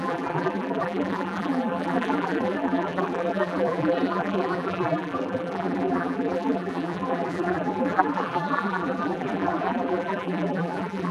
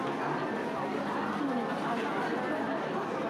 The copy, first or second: first